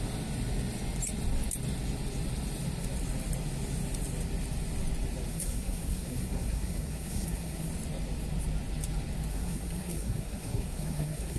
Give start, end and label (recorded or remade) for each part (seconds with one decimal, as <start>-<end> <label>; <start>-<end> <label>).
0.0-5.3 recorded; 5.3-7.7 remade; 7.7-9.3 recorded; 9.3-11.4 remade